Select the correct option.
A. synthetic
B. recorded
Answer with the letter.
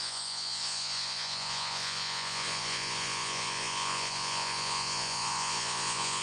A